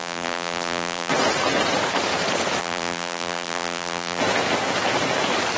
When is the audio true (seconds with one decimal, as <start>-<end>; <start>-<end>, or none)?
1.1-2.6; 4.2-5.6